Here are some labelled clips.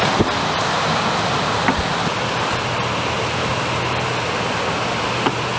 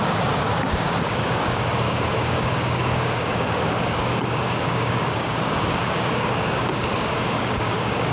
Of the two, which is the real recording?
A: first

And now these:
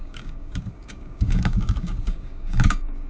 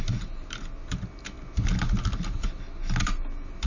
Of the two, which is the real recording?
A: second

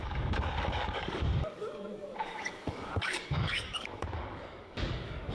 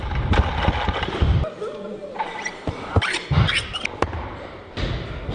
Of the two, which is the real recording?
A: second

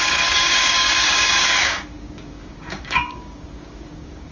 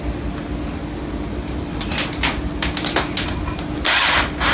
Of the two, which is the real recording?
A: second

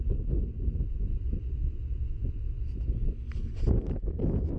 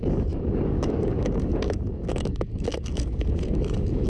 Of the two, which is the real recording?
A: first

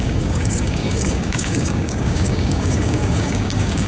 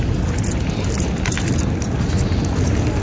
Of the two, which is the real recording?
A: second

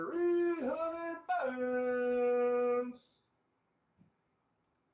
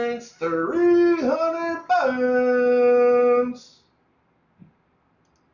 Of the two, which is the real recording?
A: second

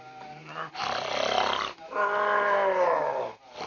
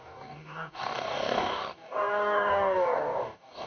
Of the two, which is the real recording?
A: first